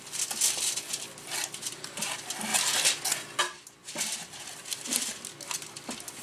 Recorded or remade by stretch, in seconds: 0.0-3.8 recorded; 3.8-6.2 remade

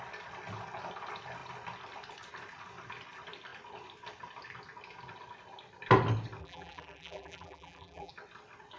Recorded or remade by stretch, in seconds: 0.0-6.4 recorded; 6.4-8.1 remade; 8.1-8.8 recorded

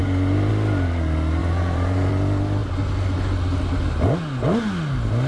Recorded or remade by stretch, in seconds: 0.0-0.5 remade; 0.5-1.4 recorded; 1.4-2.1 remade; 2.1-5.3 recorded

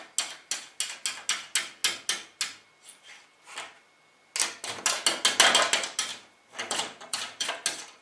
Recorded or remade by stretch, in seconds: 0.0-6.1 recorded; 6.1-7.5 remade; 7.5-8.0 recorded